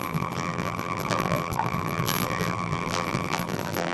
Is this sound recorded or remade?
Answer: remade